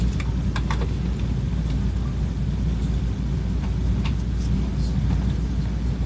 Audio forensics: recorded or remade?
recorded